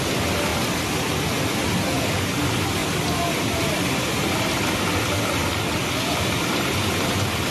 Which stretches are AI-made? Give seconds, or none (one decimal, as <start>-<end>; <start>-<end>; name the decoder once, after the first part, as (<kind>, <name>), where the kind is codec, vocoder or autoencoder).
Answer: none